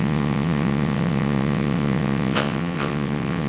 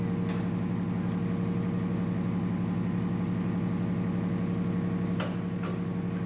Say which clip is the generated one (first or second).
first